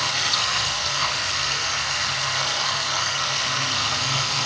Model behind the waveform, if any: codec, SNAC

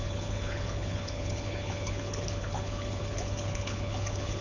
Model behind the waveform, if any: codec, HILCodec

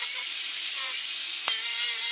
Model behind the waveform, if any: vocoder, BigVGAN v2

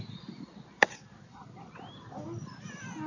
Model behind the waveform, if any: none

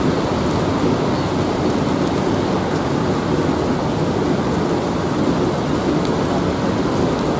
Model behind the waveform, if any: none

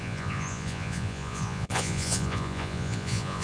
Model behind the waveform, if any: vocoder, Vocos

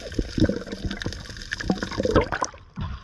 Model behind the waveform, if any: none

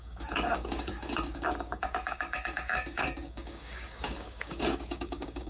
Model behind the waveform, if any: codec, DAC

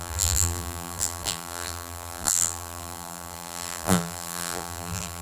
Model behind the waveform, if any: vocoder, BigVGAN v2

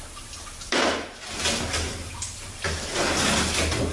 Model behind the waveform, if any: none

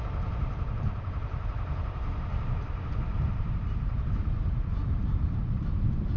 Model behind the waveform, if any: vocoder, BigVGAN v2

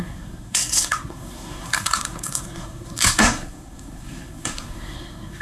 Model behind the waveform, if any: codec, SNAC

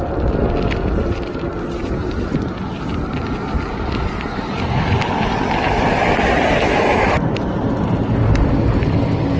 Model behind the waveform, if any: none